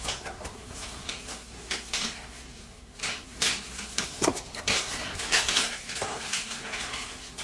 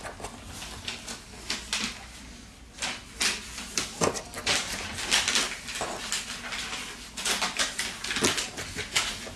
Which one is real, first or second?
second